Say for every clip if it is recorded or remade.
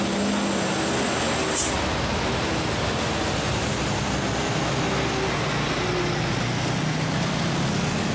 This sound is recorded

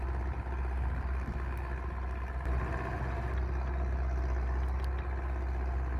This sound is recorded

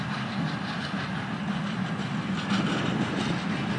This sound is recorded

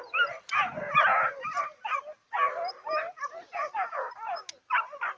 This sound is recorded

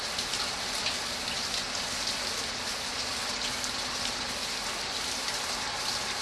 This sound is recorded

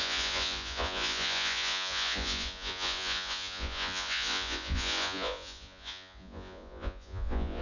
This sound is remade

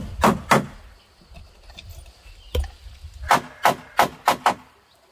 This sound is recorded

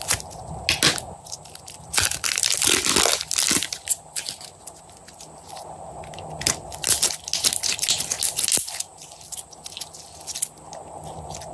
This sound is recorded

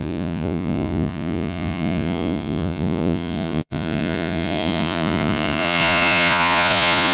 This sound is remade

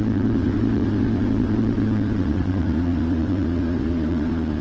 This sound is remade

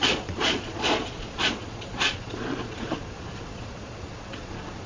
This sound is remade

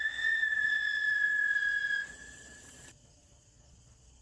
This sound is remade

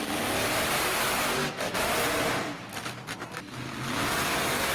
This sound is recorded